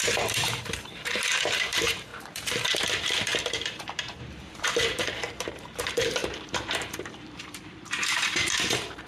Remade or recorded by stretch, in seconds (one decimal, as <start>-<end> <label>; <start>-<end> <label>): 0.0-9.1 remade